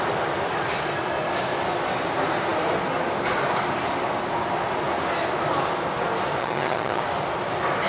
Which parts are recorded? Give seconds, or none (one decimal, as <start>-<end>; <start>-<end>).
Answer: 0.0-6.4; 7.0-7.9